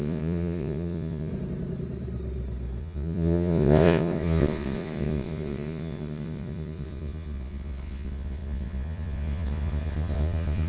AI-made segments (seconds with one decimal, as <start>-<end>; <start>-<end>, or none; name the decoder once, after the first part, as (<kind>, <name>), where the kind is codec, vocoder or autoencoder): 0.0-1.3 (vocoder, Vocos); 2.8-10.7